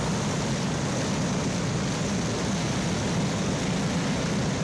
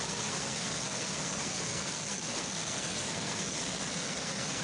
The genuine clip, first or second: first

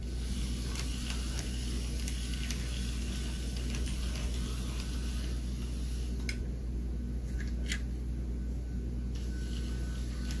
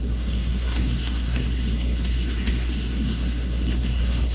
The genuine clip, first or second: first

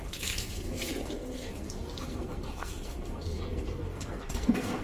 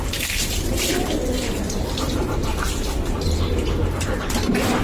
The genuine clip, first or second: second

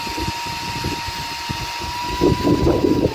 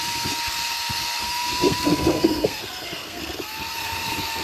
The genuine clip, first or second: first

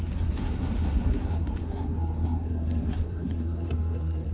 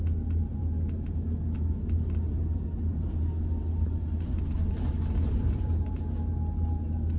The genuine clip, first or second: second